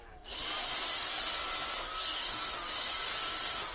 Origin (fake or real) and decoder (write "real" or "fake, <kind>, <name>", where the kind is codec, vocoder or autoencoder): real